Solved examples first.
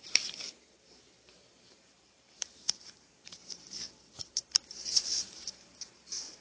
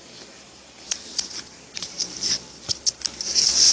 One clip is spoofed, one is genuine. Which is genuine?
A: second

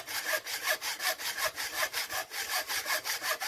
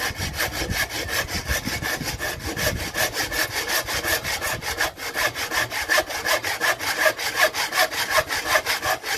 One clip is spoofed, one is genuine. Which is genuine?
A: second